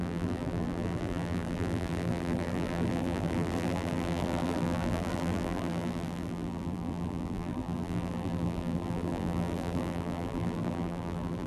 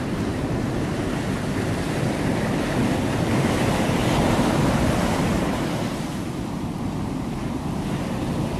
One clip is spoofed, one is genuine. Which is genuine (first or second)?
second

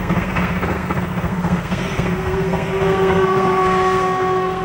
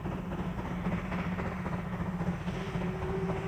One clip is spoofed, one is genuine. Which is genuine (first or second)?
second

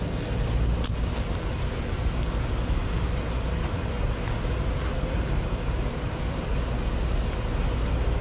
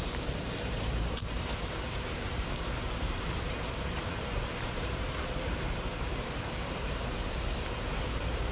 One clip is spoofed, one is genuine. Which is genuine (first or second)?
first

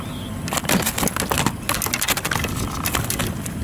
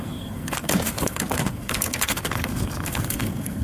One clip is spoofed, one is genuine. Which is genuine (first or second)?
first